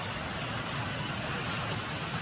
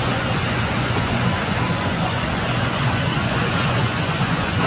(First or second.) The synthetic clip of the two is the second